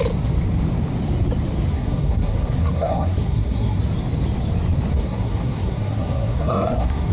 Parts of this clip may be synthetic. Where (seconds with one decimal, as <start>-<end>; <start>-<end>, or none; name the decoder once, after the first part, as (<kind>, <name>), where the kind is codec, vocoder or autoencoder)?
1.7-3.8 (codec, SNAC); 4.9-7.1